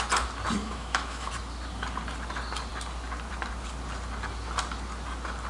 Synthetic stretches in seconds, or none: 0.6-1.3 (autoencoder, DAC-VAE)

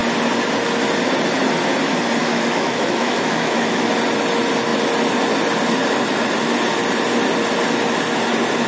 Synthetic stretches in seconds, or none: 2.2-3.9 (autoencoder, DAC-VAE)

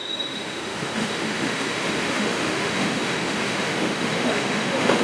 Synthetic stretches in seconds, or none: 0.0-5.0 (autoencoder, DAC-VAE)

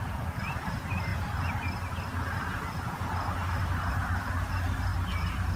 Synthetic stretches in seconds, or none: none

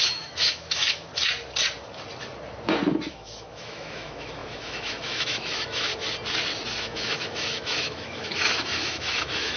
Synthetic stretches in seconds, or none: 0.0-1.1 (autoencoder, DAC-VAE); 3.1-5.9; 6.8-9.6